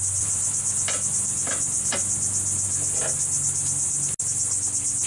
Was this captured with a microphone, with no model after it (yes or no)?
yes